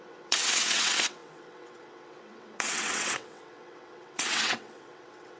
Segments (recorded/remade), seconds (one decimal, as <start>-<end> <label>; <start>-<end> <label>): 0.0-5.4 remade

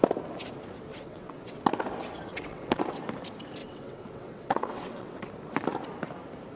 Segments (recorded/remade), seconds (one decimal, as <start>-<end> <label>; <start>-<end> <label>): 0.0-0.9 recorded; 0.9-1.6 remade; 1.6-2.3 recorded; 2.3-3.0 remade; 3.0-3.6 recorded; 3.6-5.3 remade; 5.3-6.6 recorded

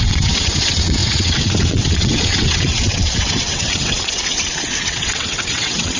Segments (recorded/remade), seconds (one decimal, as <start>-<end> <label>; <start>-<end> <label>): 0.0-6.0 remade

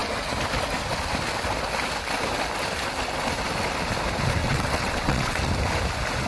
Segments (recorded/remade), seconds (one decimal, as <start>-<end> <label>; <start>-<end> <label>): 0.0-4.4 recorded; 4.4-5.5 remade; 5.5-6.3 recorded

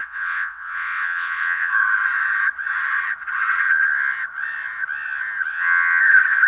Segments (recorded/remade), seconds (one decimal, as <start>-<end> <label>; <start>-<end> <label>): 0.0-1.7 remade; 1.7-5.5 recorded; 5.5-6.0 remade; 6.0-6.5 recorded

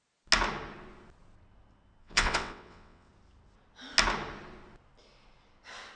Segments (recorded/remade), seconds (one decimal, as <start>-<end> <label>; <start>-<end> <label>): 0.0-2.0 recorded; 2.0-3.1 remade; 3.1-6.0 recorded

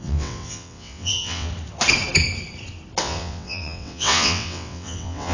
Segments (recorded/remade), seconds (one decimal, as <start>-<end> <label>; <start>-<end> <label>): 0.0-1.5 remade; 1.5-3.0 recorded; 3.0-5.3 remade